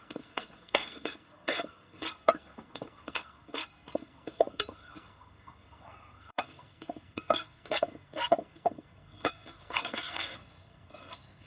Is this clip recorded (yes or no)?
no